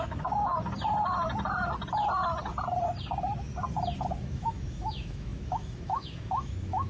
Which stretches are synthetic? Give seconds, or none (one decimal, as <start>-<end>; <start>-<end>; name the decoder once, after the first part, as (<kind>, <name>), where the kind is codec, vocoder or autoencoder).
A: 0.0-0.5 (autoencoder, DAC-VAE); 4.2-6.9